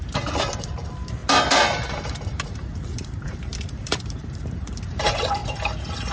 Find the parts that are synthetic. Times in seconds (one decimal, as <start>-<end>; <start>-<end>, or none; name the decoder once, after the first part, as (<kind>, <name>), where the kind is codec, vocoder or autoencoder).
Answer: 0.0-1.2 (vocoder, BigVGAN v2); 2.3-5.4